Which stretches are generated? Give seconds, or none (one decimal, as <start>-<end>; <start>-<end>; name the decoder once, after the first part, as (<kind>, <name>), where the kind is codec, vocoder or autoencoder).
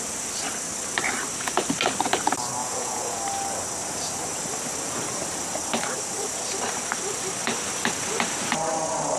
2.6-3.2 (vocoder, Vocos)